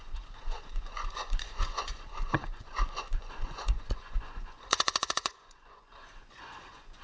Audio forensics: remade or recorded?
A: remade